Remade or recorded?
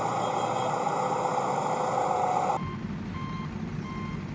recorded